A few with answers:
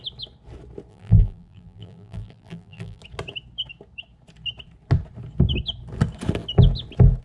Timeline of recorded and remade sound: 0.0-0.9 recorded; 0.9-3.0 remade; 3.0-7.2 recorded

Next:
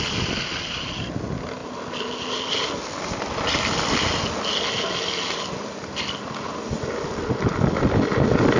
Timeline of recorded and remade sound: 0.0-8.6 recorded

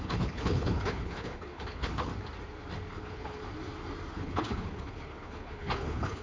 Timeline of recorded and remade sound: 0.0-2.1 remade; 2.1-2.9 recorded; 2.9-3.4 remade; 3.4-4.1 recorded; 4.1-6.2 remade